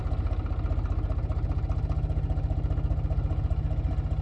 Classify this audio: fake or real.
real